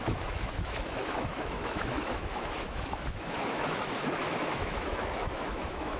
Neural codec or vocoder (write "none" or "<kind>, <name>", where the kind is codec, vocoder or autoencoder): autoencoder, DAC-VAE